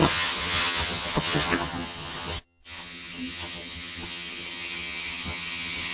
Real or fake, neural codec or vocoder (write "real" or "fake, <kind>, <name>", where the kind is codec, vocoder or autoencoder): fake, vocoder, HiFi-GAN